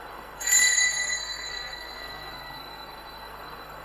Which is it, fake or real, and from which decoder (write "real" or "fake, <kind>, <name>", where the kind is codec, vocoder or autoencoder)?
fake, codec, SNAC